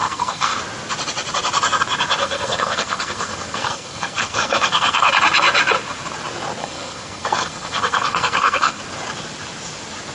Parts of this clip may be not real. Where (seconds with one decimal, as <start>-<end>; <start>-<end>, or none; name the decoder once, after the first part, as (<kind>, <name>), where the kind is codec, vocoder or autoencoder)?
0.0-0.6 (codec, SNAC); 2.2-5.1; 6.6-8.8

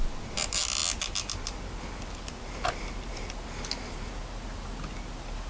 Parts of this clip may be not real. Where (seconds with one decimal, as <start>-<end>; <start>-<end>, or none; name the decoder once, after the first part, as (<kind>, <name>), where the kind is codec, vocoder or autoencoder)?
none

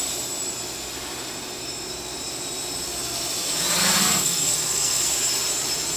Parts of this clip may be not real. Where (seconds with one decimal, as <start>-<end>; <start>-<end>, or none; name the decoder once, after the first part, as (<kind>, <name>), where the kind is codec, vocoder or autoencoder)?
4.0-5.1 (codec, SNAC)

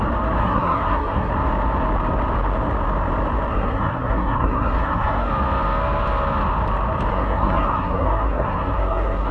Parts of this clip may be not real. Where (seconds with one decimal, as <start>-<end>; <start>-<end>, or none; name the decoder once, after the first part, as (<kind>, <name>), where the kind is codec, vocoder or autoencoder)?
0.4-1.3 (codec, SNAC); 3.5-5.3; 7.1-9.3

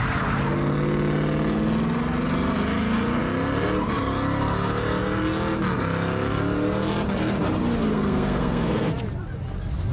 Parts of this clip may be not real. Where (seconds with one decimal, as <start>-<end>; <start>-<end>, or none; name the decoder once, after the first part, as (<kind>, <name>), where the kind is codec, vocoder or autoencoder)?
7.9-8.9 (codec, SNAC)